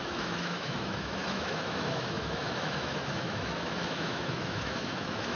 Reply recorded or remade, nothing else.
remade